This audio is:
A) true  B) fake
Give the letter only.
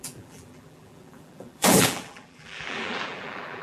B